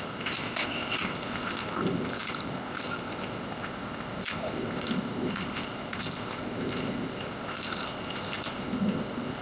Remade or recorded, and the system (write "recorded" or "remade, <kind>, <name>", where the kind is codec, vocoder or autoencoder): remade, codec, ZipCodec